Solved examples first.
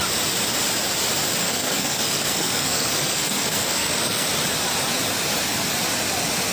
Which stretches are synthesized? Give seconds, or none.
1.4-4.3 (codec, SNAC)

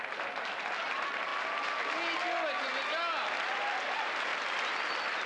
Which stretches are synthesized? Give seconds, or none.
none

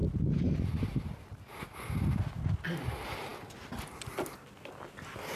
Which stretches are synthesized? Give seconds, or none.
none

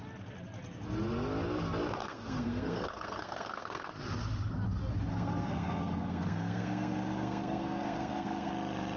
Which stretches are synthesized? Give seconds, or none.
2.0-3.9 (codec, SNAC); 5.1-8.5

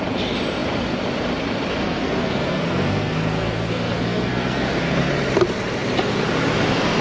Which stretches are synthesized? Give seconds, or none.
1.8-5.1 (codec, SNAC)

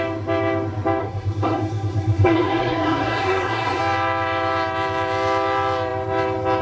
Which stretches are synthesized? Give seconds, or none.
1.0-3.8 (codec, SNAC)